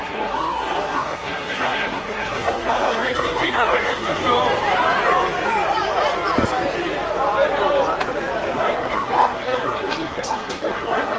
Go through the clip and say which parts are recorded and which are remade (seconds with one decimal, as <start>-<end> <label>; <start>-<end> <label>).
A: 0.0-4.2 remade; 4.2-8.6 recorded; 8.6-11.2 remade